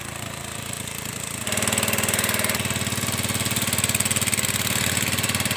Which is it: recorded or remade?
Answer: recorded